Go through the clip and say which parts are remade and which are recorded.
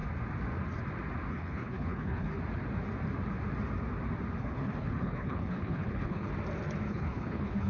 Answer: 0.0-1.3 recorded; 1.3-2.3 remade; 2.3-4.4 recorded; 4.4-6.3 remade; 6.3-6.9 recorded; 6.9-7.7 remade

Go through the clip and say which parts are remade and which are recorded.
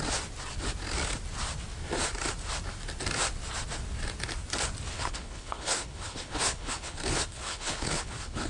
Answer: 0.0-4.9 recorded; 4.9-8.5 remade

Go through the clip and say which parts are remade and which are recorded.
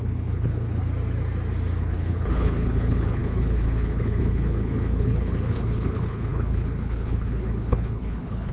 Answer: 0.0-0.8 remade; 0.8-1.8 recorded; 1.8-8.5 remade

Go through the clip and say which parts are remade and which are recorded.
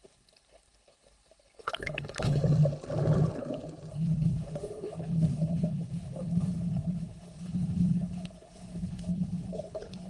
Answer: 0.0-2.4 remade; 2.4-3.9 recorded; 3.9-10.1 remade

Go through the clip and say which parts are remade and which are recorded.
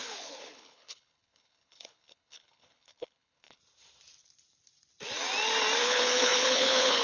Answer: 0.0-3.6 remade; 3.6-5.8 recorded; 5.8-7.0 remade